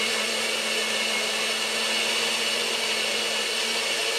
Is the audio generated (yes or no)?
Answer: no